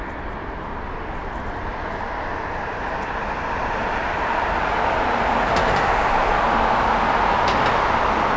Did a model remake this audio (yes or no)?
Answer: no